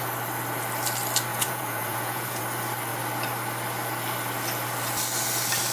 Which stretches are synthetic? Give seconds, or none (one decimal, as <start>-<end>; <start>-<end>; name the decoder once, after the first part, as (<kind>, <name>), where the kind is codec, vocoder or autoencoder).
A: 1.3-2.4 (vocoder, Vocos)